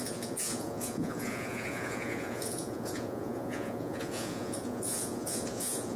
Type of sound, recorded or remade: remade